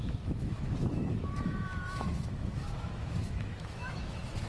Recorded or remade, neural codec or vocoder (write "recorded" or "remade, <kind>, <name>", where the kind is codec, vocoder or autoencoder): remade, autoencoder, DAC-VAE